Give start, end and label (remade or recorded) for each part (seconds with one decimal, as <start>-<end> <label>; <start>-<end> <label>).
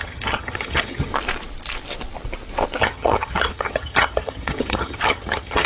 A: 0.0-1.1 remade; 1.1-2.8 recorded; 2.8-5.7 remade